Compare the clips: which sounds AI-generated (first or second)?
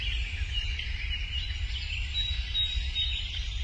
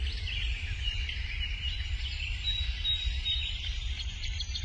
second